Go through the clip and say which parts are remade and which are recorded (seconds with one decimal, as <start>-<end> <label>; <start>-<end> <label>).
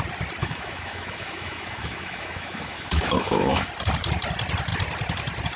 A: 0.0-0.4 recorded; 0.4-3.7 remade; 3.7-5.6 recorded